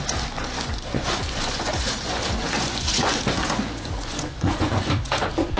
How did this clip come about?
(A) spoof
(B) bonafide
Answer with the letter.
A